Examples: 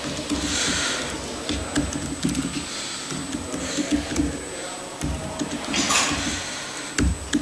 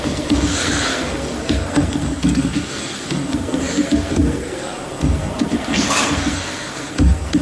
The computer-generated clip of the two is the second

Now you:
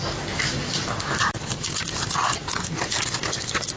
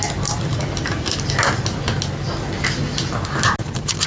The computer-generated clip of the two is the first